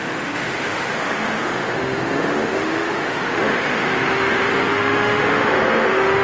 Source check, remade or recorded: remade